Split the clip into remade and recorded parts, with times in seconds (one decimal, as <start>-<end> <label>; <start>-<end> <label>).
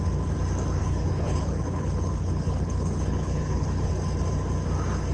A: 0.0-0.8 recorded; 0.8-3.9 remade; 3.9-5.1 recorded